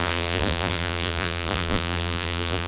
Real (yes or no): no